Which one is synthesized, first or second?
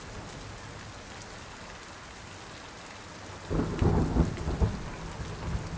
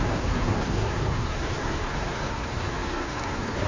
second